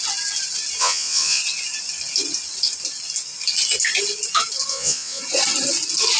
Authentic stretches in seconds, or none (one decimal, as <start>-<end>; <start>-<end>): 0.0-0.8; 1.4-4.7; 5.2-6.2